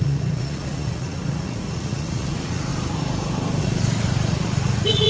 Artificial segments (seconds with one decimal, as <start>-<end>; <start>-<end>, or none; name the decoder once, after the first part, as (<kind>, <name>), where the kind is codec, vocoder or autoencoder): 0.0-2.7 (vocoder, Vocos); 3.6-5.1